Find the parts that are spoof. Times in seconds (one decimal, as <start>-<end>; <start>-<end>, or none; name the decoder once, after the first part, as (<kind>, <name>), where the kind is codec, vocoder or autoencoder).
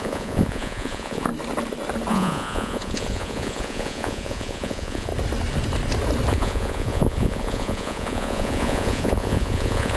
0.0-1.3 (vocoder, Vocos); 2.1-5.1; 6.3-10.0